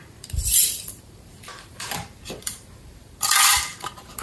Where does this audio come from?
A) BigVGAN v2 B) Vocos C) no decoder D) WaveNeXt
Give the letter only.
A